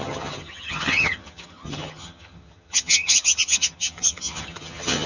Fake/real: fake